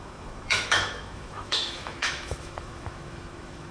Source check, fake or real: fake